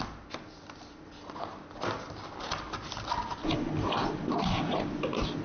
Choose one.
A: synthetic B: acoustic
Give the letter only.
B